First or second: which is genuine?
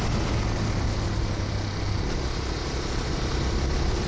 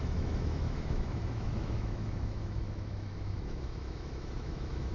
first